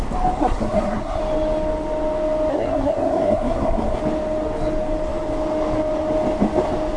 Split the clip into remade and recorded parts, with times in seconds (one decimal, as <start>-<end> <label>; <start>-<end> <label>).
0.0-0.4 recorded; 0.4-1.2 remade; 1.2-2.5 recorded; 2.5-4.0 remade; 4.0-7.0 recorded